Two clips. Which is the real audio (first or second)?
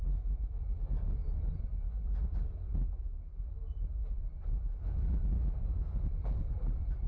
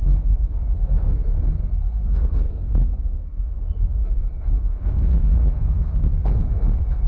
first